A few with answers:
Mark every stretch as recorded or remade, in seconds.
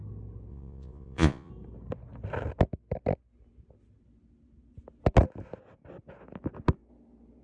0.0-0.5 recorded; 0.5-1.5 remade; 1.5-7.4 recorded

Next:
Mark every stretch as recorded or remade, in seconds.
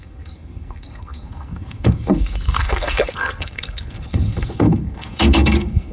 0.0-5.9 remade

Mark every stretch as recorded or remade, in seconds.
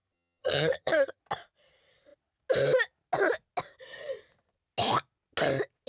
0.0-1.2 remade; 1.2-5.9 recorded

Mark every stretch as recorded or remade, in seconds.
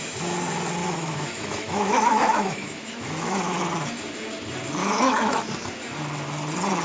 0.0-0.8 recorded; 0.8-3.6 remade; 3.6-4.8 recorded; 4.8-5.4 remade; 5.4-6.8 recorded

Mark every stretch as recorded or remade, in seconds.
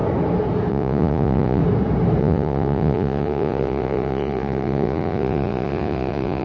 0.0-0.7 recorded; 0.7-1.6 remade; 1.6-2.2 recorded; 2.2-6.4 remade